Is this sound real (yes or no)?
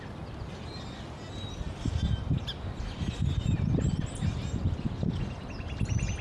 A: yes